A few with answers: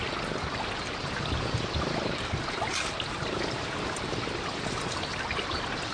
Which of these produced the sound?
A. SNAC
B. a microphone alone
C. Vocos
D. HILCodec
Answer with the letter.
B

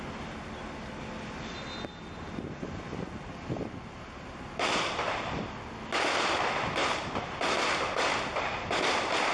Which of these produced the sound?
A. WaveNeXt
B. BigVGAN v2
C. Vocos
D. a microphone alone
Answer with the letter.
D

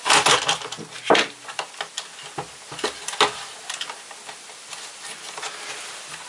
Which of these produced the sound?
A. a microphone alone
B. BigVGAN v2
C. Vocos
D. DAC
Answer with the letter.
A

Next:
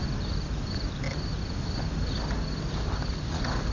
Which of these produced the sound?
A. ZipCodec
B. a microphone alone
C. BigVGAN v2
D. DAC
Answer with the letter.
B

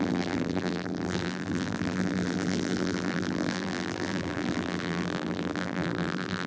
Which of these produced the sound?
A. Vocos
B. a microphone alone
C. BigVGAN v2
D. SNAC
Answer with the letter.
C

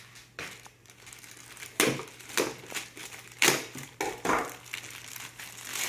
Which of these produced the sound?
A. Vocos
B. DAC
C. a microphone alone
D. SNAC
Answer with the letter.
C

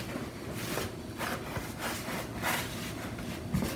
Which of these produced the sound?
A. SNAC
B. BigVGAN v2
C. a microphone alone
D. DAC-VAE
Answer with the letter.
C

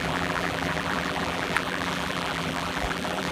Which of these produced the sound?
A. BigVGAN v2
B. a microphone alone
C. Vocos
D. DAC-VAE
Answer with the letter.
A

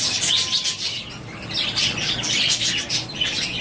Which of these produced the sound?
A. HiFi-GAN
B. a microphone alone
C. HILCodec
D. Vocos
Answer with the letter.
B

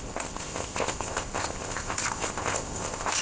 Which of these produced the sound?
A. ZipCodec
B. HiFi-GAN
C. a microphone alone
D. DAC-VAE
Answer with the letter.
A